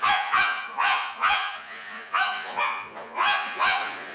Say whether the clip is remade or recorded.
remade